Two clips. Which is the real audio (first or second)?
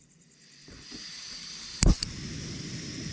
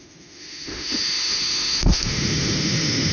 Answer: first